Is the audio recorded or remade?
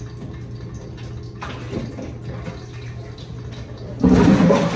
recorded